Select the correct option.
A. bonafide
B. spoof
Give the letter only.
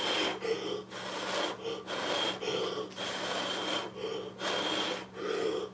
A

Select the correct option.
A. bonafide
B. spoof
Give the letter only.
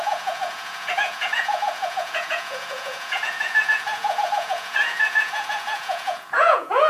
B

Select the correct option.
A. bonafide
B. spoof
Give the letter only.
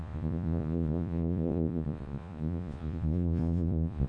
B